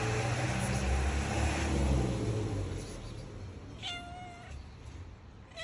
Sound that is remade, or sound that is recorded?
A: recorded